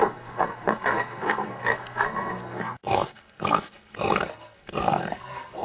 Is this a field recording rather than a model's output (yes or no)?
no